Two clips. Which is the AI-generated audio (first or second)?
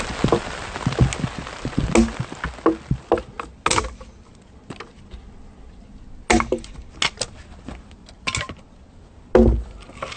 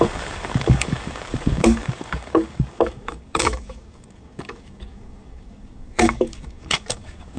second